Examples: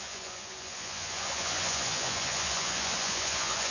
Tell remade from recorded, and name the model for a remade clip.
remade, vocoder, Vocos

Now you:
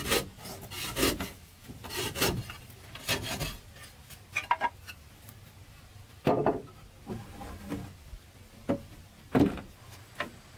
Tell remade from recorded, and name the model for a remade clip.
recorded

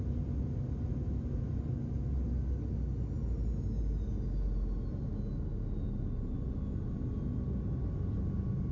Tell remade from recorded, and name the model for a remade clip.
recorded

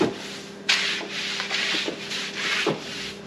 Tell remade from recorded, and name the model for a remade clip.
recorded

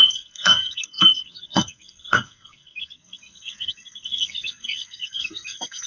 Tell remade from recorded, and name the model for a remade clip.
remade, codec, SNAC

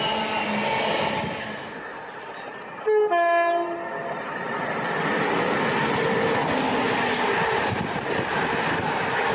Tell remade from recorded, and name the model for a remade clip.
recorded